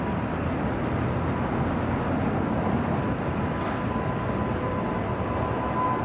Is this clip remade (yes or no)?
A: no